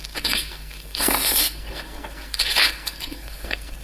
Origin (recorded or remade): remade